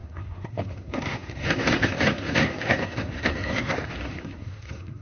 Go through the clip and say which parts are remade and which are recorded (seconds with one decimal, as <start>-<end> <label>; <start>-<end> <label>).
0.0-5.0 remade